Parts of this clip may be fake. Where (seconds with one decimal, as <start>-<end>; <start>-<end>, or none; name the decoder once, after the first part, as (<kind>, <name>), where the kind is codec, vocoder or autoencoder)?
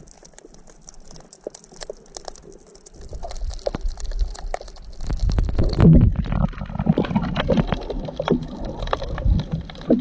none